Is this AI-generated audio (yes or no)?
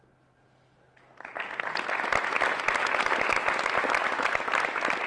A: no